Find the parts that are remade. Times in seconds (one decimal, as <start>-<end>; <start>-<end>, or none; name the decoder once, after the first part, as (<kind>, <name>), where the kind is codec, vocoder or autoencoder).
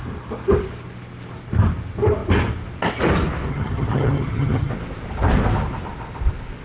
3.5-4.7 (vocoder, HiFi-GAN)